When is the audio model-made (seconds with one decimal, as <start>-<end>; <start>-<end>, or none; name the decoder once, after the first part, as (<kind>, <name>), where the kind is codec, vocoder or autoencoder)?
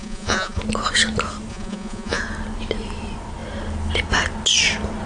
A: 0.0-0.6 (vocoder, Vocos); 1.5-2.2